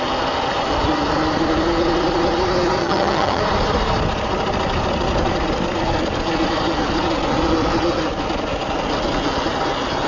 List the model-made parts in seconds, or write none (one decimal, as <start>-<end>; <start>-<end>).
2.8-3.4

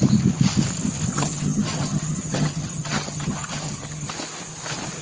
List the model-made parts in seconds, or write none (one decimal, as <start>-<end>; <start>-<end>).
1.1-4.1

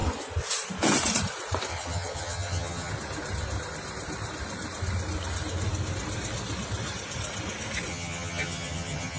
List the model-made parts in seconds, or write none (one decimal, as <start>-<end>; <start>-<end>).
1.7-2.9; 7.9-9.2

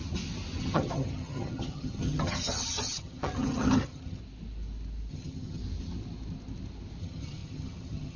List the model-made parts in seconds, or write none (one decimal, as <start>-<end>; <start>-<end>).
0.6-4.2; 5.1-5.6; 7.0-8.2

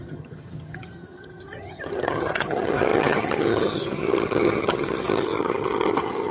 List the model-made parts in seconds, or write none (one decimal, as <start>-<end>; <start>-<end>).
0.0-6.3

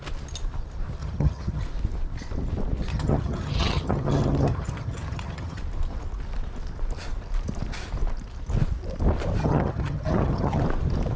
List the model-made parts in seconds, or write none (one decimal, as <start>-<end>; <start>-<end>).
1.0-1.6; 2.9-5.6; 9.4-10.6

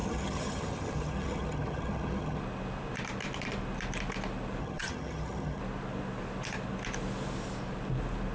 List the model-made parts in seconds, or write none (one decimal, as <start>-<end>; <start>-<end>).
0.0-2.4; 4.6-5.6